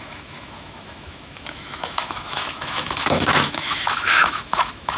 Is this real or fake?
fake